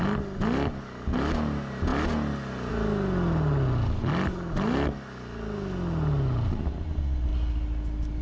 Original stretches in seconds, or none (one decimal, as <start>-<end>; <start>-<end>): 0.0-8.2